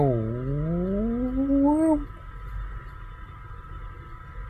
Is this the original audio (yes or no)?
yes